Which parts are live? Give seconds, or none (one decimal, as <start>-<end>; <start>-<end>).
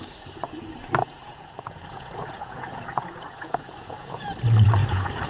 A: 0.0-1.0; 4.2-4.8